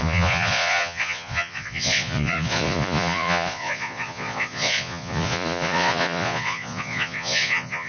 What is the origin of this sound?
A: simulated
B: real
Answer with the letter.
A